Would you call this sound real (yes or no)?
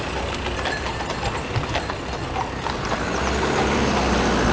yes